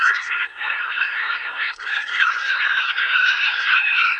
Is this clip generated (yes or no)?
yes